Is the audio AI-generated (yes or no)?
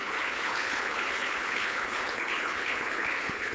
yes